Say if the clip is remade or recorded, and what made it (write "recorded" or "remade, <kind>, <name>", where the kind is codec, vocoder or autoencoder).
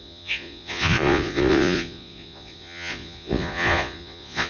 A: remade, vocoder, Vocos